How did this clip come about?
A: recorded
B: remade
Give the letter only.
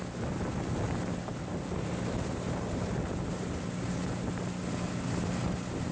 A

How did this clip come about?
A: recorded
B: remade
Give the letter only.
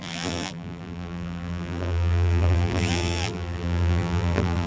B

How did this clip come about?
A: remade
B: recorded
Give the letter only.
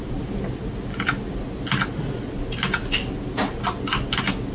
B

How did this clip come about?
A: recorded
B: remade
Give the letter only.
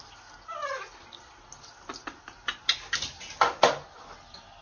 A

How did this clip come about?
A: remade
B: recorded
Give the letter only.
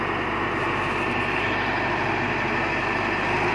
B